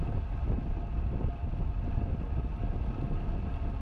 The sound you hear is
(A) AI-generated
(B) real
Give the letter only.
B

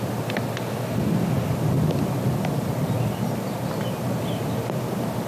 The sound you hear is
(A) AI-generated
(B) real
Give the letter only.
B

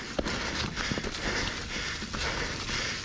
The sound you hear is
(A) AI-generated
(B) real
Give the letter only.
B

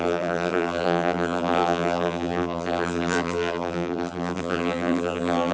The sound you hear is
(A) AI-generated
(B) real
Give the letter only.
A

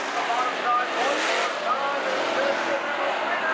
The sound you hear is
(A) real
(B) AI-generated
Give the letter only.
A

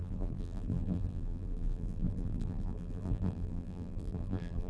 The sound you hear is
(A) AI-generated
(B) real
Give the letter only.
A